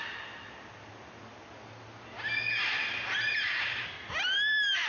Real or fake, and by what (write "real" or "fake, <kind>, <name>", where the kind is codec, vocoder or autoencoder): real